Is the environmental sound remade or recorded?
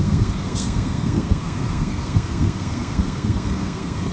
remade